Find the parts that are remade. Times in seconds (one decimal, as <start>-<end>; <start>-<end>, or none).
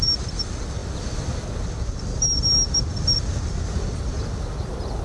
none